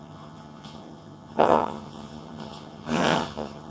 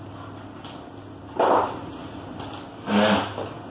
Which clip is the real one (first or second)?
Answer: second